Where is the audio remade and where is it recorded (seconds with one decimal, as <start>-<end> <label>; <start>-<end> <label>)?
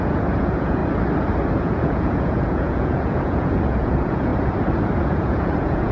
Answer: 0.0-0.8 remade; 0.8-1.6 recorded; 1.6-4.3 remade; 4.3-5.0 recorded; 5.0-5.9 remade